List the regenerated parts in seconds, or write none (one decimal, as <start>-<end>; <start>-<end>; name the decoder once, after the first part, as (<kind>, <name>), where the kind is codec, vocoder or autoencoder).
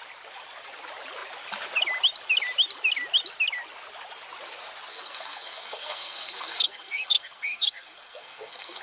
4.9-8.8 (codec, SNAC)